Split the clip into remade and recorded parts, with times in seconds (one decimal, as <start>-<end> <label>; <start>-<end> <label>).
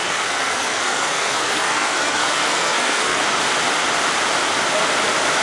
0.0-3.2 remade; 3.2-5.4 recorded